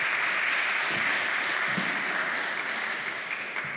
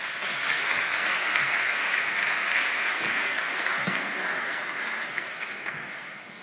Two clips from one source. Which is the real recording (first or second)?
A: first